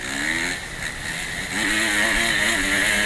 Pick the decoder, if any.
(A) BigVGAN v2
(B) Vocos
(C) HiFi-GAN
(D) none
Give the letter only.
D